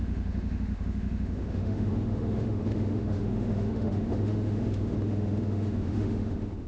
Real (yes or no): no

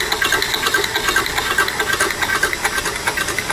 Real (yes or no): yes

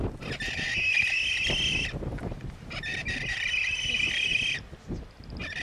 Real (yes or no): yes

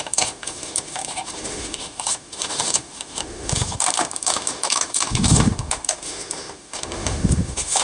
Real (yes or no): no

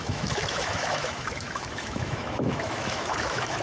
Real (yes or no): no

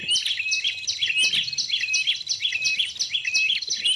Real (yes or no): yes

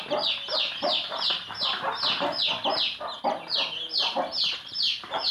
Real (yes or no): yes